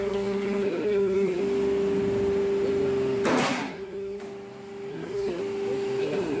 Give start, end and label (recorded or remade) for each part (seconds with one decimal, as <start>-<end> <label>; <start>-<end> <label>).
0.0-1.4 remade; 1.4-3.4 recorded; 3.4-4.2 remade; 4.2-4.9 recorded; 4.9-5.4 remade; 5.4-6.0 recorded; 6.0-6.4 remade